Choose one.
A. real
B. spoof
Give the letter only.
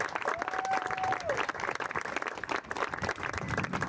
A